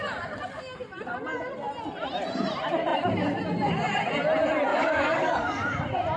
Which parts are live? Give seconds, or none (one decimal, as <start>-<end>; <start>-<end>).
0.0-4.7; 5.8-6.2

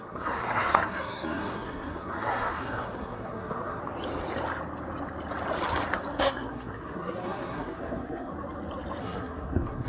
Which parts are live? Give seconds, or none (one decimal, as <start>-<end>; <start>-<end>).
3.8-6.2; 8.3-9.0

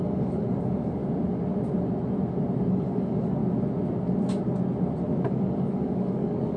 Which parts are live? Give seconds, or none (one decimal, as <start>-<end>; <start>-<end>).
1.0-2.7; 3.4-5.3

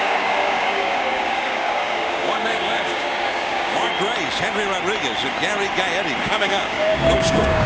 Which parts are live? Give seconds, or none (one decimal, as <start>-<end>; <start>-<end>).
3.9-6.2

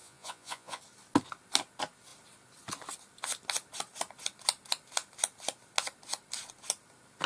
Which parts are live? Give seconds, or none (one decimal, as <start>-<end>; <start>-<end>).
0.8-7.3

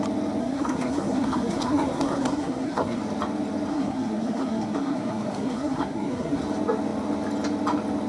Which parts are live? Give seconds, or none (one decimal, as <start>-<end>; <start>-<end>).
0.0-0.4; 3.0-3.7; 6.4-8.1